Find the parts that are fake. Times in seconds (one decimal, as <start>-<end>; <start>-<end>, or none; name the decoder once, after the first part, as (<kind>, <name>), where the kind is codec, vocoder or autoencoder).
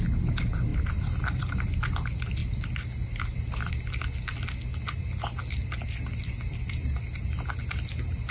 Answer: none